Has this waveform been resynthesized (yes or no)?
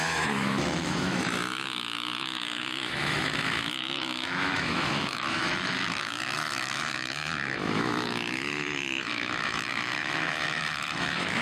yes